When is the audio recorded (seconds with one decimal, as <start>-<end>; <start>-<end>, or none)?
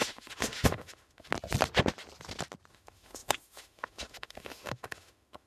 1.3-2.7